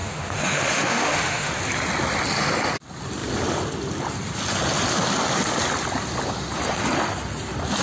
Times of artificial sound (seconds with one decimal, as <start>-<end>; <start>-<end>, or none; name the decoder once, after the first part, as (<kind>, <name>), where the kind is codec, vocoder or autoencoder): 0.0-1.5 (autoencoder, DAC-VAE)